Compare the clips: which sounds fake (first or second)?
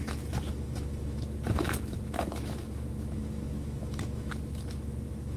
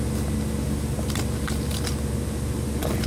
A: first